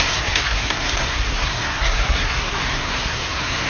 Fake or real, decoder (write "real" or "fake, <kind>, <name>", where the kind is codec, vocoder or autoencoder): fake, codec, SNAC